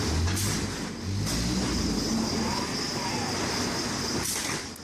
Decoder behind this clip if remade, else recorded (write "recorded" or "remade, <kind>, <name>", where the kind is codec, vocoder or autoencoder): recorded